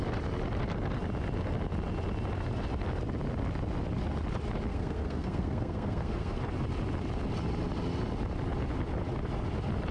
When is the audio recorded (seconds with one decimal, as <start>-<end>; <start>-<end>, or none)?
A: 0.0-4.7; 6.4-9.9